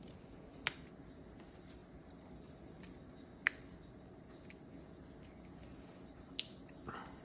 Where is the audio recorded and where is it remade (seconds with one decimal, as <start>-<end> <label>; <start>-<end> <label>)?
0.0-7.2 recorded

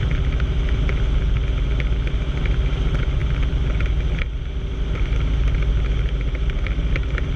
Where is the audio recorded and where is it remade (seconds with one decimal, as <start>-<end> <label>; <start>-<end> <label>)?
0.0-7.4 recorded

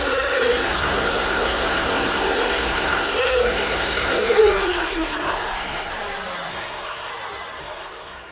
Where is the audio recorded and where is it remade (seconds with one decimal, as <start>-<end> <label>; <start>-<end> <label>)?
0.0-5.9 remade; 5.9-6.5 recorded; 6.5-7.1 remade; 7.1-7.6 recorded; 7.6-8.3 remade

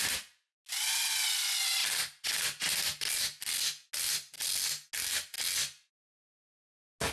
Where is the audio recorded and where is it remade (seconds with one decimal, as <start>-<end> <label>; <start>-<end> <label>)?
0.0-7.1 recorded

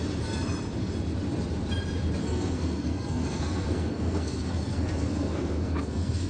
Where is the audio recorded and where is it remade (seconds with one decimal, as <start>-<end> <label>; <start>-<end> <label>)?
0.0-2.2 recorded; 2.2-6.3 remade

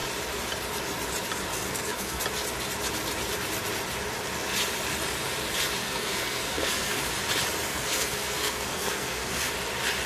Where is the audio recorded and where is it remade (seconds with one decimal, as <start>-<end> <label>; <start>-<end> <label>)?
0.0-1.5 recorded; 1.5-2.2 remade; 2.2-5.8 recorded; 5.8-7.0 remade; 7.0-7.7 recorded; 7.7-9.5 remade; 9.5-10.1 recorded

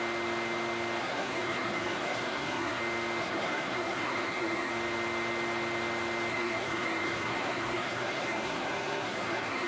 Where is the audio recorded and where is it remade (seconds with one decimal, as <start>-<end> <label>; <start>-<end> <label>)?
0.0-1.0 recorded; 1.0-2.8 remade; 2.8-3.2 recorded; 3.2-4.7 remade; 4.7-6.3 recorded; 6.3-9.7 remade

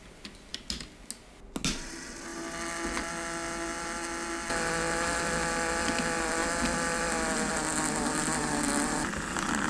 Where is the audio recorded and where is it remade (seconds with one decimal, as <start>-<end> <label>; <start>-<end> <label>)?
0.0-9.7 recorded